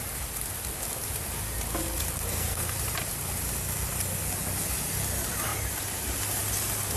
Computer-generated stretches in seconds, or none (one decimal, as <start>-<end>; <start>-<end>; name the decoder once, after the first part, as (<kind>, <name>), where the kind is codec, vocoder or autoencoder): 2.3-2.8 (codec, SNAC)